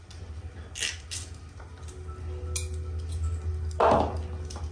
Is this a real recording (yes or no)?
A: yes